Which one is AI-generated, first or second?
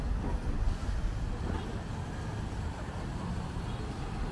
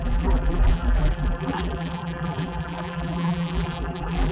second